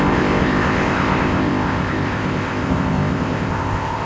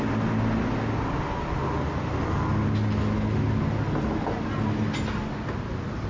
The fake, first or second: first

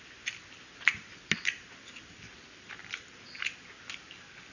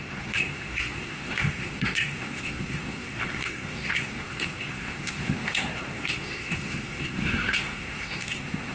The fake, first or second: second